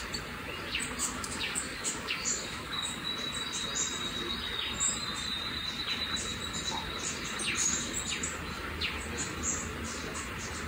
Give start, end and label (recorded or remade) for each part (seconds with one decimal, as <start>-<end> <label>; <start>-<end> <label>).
0.0-1.0 recorded; 1.0-3.1 remade; 3.1-10.7 recorded